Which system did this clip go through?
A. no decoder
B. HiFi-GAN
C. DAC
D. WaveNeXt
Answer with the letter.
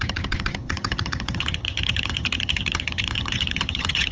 B